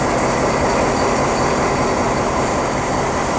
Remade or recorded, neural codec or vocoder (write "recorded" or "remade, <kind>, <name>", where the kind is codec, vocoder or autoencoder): remade, vocoder, BigVGAN v2